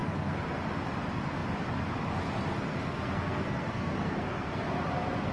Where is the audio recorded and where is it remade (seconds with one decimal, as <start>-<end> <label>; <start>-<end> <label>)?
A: 0.0-0.6 remade; 0.6-2.6 recorded; 2.6-4.7 remade; 4.7-5.3 recorded